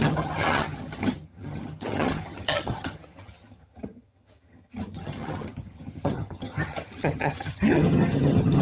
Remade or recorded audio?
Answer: remade